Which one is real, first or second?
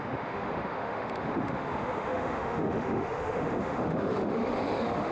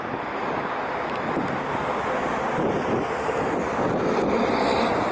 second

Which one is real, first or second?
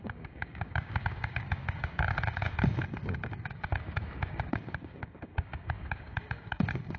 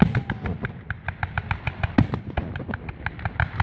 second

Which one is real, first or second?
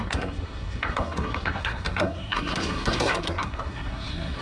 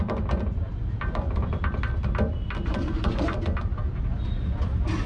second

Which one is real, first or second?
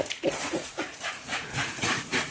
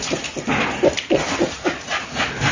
second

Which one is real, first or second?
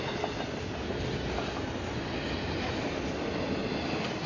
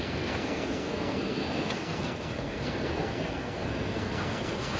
first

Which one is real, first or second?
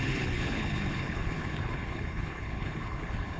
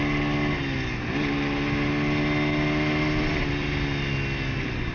second